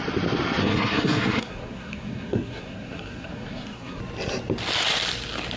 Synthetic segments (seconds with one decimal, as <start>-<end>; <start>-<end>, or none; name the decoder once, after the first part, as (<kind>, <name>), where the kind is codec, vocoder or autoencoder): 0.6-4.0 (codec, SNAC)